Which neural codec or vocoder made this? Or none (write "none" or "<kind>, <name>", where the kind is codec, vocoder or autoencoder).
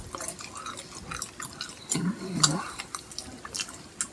none